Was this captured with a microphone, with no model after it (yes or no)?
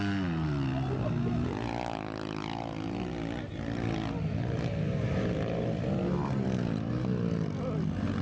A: yes